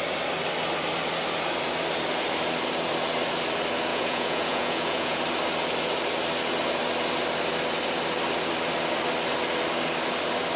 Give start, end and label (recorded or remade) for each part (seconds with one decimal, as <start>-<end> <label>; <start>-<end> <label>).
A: 0.0-3.9 recorded; 3.9-5.2 remade; 5.2-10.6 recorded